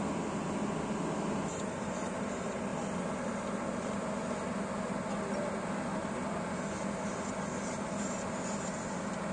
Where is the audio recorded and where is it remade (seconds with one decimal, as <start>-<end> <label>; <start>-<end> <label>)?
0.0-9.3 recorded